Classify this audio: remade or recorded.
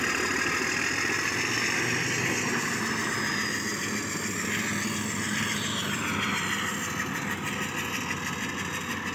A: recorded